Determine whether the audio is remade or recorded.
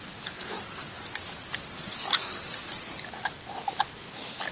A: recorded